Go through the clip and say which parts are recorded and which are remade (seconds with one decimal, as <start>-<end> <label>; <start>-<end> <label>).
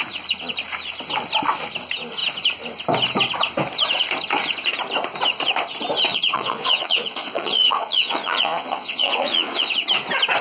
0.0-6.1 recorded; 6.1-9.7 remade; 9.7-10.4 recorded